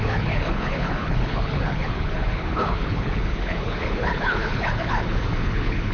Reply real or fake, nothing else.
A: fake